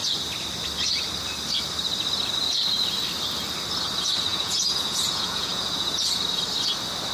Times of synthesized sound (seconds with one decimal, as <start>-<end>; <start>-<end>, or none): 4.3-6.0